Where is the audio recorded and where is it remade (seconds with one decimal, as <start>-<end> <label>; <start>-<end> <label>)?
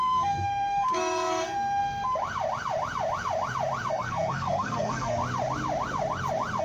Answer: 0.0-1.8 remade; 1.8-3.9 recorded; 3.9-5.2 remade; 5.2-6.6 recorded